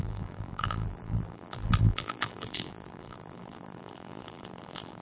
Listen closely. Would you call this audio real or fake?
fake